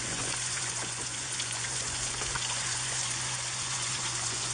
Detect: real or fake fake